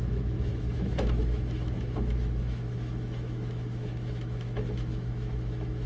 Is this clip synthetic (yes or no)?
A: yes